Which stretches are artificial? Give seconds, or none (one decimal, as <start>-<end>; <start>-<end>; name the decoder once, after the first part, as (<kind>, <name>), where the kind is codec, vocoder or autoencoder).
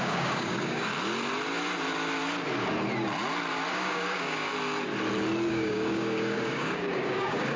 0.0-0.9 (codec, DAC); 3.7-4.5; 5.5-7.6